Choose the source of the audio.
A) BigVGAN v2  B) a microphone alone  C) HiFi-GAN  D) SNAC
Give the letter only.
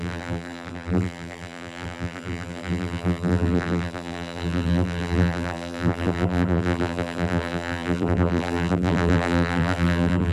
A